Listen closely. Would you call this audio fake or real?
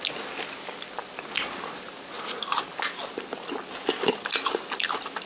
real